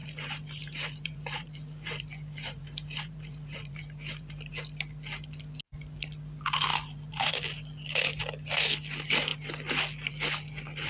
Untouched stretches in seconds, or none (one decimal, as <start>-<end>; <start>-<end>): 4.5-6.7; 7.3-10.9